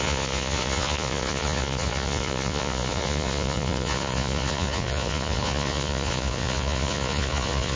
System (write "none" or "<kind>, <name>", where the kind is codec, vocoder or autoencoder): vocoder, Vocos